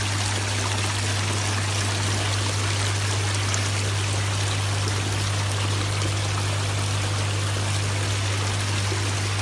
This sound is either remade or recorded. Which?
recorded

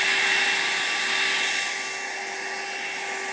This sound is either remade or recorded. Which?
recorded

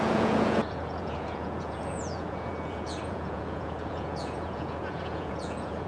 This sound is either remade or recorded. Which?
remade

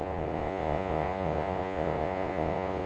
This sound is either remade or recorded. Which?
remade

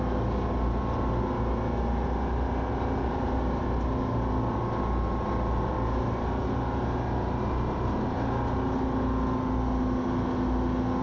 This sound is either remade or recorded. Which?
recorded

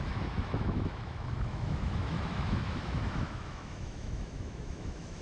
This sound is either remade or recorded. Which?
remade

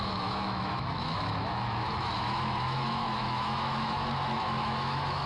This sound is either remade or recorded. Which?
remade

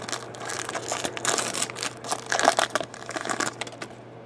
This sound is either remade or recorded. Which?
recorded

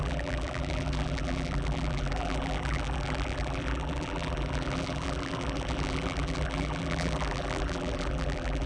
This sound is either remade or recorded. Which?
remade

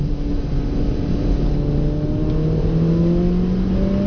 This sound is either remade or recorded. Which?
recorded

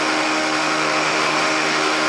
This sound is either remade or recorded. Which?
remade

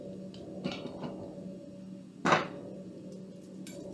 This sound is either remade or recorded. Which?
recorded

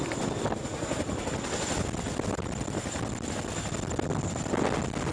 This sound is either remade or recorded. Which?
recorded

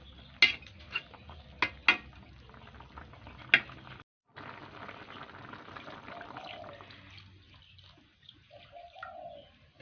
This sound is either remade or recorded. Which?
recorded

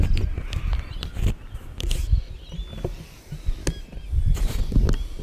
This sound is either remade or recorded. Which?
recorded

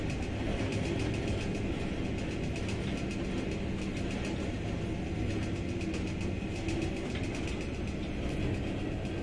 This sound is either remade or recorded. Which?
recorded